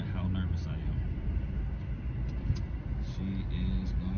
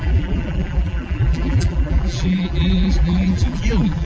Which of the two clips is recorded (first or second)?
first